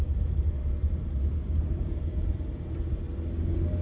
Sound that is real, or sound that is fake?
fake